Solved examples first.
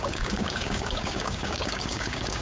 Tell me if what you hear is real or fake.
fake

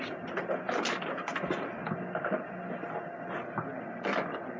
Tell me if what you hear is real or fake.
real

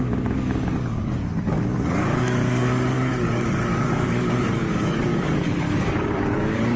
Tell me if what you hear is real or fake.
fake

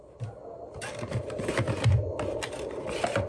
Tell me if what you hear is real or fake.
real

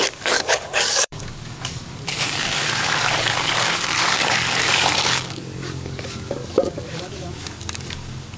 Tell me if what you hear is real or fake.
fake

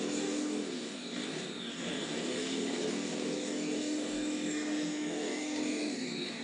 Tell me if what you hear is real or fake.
fake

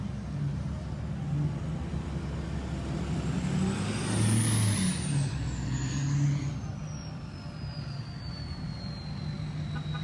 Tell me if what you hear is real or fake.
real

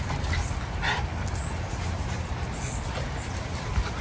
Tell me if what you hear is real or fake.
real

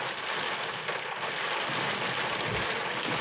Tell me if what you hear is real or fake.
real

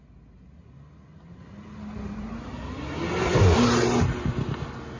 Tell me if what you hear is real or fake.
real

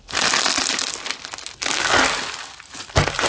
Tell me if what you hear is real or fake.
real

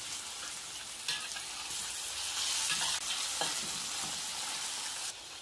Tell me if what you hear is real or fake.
real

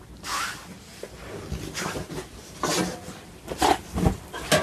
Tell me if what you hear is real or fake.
real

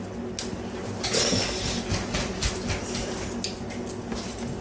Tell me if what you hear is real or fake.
real